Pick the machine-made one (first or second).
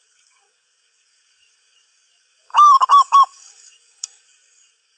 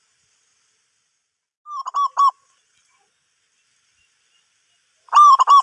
first